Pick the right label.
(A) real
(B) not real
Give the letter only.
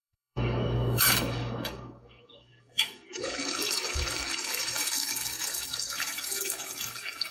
B